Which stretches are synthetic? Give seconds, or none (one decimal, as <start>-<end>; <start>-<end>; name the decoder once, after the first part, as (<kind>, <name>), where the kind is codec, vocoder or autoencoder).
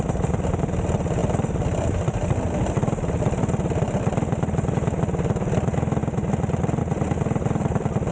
none